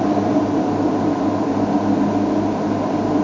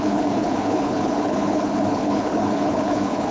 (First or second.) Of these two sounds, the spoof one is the second